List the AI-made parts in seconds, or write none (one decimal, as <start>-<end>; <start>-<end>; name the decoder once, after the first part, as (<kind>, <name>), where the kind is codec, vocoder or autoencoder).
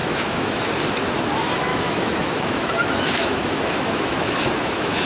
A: 0.0-0.7 (autoencoder, DAC-VAE); 1.7-5.1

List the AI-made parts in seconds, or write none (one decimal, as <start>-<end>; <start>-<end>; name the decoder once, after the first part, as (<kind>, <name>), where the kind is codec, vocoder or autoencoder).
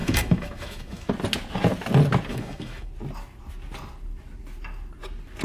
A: 0.0-1.1 (autoencoder, DAC-VAE); 2.3-2.9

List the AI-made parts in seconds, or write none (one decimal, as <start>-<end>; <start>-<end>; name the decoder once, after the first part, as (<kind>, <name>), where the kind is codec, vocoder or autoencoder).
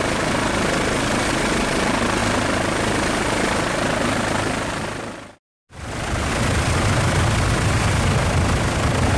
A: none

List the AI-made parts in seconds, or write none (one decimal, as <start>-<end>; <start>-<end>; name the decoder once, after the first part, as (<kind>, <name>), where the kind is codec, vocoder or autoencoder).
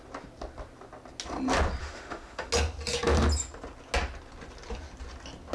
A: 1.8-2.5 (autoencoder, DAC-VAE)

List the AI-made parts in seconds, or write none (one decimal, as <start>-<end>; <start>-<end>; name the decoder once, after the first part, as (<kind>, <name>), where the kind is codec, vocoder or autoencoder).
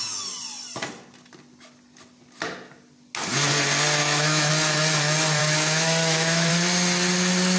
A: 4.0-4.5 (autoencoder, DAC-VAE); 5.4-6.5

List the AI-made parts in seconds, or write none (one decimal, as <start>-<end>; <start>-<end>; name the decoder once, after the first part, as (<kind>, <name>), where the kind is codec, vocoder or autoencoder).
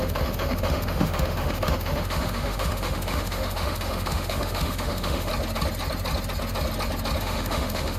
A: 0.0-5.3 (autoencoder, DAC-VAE); 7.2-8.0